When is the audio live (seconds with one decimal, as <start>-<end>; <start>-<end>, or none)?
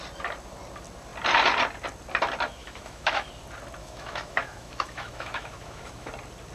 0.0-2.6; 3.3-3.8; 6.1-6.5